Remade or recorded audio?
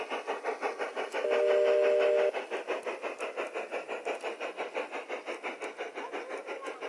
recorded